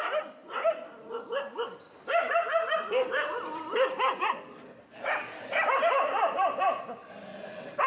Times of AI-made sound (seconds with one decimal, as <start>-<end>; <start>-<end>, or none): none